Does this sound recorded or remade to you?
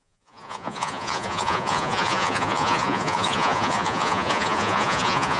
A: remade